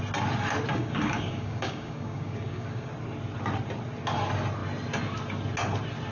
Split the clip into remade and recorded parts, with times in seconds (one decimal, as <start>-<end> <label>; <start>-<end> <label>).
0.0-0.7 recorded; 0.7-2.9 remade; 2.9-6.1 recorded